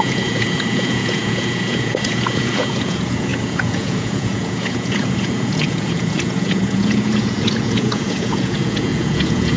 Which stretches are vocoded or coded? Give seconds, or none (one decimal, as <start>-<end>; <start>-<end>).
0.0-9.6